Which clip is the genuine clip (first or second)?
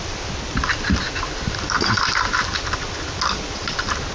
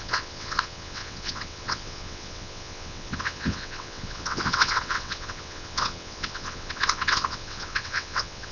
first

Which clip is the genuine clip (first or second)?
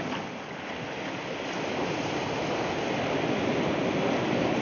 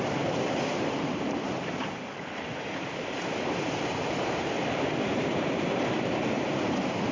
first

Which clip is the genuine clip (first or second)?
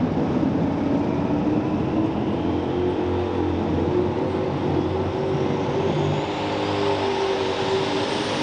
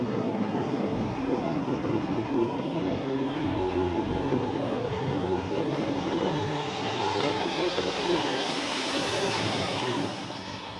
first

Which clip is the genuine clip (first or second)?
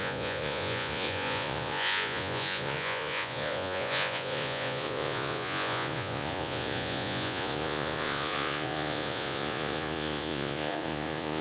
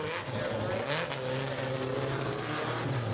second